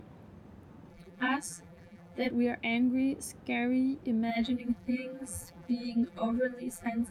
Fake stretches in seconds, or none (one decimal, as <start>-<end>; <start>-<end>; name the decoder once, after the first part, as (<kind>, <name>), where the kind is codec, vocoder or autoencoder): 0.9-2.3 (vocoder, BigVGAN v2); 4.3-7.1